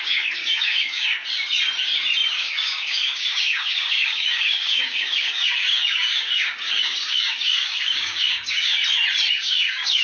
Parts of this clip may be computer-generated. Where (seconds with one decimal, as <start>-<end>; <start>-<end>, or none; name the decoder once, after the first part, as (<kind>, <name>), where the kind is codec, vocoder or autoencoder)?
0.0-1.2 (codec, DAC); 2.3-8.7; 9.3-10.0